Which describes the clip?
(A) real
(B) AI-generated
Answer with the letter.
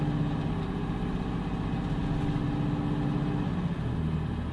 A